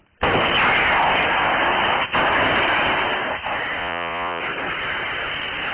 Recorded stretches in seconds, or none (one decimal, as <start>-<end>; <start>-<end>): 0.0-3.8; 4.4-5.7